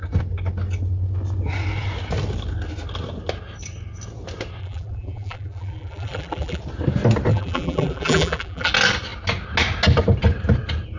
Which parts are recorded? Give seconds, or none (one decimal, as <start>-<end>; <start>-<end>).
0.0-4.6; 6.6-7.3; 8.7-11.0